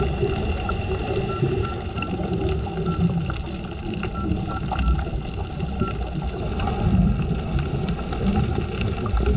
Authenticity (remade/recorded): recorded